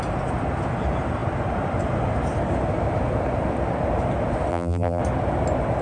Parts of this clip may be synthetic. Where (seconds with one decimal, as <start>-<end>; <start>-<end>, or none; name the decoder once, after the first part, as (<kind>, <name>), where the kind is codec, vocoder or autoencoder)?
4.5-5.0 (vocoder, BigVGAN v2)